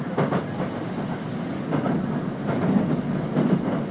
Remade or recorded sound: recorded